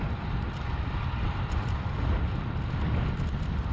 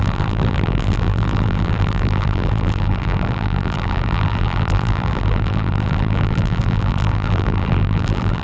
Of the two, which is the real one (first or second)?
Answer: first